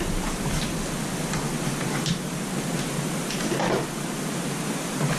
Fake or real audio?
real